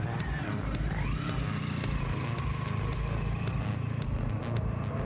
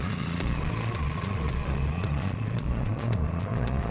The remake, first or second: second